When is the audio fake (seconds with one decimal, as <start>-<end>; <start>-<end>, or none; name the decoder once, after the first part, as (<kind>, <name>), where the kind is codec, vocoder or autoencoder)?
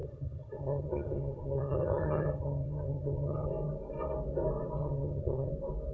0.0-3.5 (vocoder, HiFi-GAN); 4.8-5.5